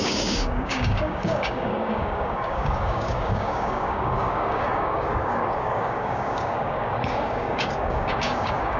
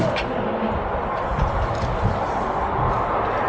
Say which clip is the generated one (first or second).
first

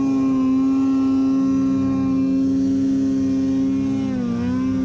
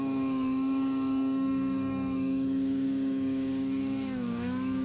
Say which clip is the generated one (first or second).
second